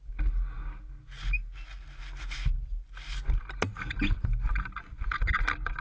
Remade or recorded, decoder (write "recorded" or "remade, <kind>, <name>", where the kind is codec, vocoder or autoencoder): recorded